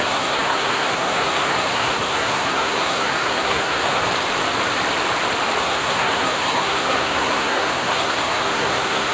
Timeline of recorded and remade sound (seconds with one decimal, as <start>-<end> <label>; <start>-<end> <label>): 0.0-4.0 remade; 4.0-5.6 recorded; 5.6-9.1 remade